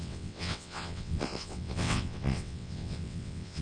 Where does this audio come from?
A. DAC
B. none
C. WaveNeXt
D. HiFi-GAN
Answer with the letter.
C